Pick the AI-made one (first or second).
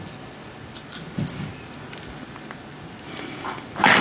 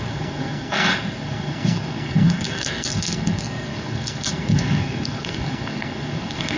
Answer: second